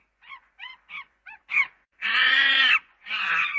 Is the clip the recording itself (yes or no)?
no